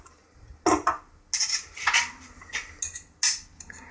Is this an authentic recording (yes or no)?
yes